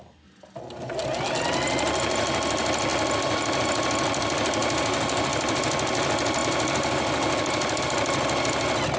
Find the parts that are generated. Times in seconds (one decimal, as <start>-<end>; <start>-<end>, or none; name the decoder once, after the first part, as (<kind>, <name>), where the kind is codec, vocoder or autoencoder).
none